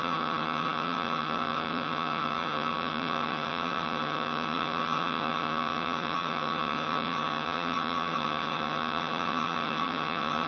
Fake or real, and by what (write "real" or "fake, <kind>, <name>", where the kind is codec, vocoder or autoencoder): fake, vocoder, HiFi-GAN